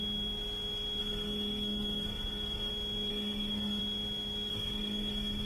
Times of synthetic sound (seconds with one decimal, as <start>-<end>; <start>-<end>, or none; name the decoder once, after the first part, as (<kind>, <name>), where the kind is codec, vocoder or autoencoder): 1.0-2.7 (codec, SNAC); 3.1-3.8; 4.5-5.5